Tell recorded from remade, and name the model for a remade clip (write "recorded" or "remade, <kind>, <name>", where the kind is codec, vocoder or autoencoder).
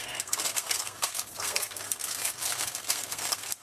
remade, codec, SNAC